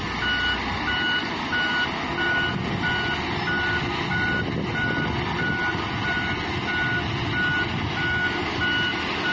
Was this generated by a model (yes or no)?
no